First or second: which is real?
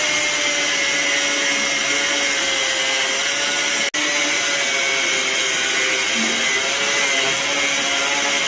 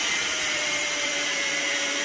first